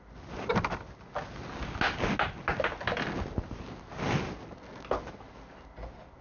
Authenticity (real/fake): real